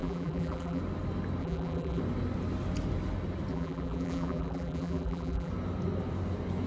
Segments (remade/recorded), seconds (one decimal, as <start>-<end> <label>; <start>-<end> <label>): 0.0-0.8 remade; 0.8-1.4 recorded; 1.4-2.0 remade; 2.0-3.5 recorded; 3.5-5.5 remade; 5.5-6.7 recorded